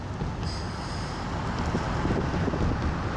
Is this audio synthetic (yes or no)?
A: no